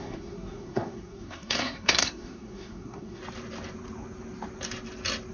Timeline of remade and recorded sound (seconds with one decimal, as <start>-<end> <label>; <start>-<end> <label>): 0.0-3.2 remade; 3.2-5.3 recorded